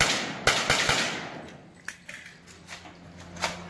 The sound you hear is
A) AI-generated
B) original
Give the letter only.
B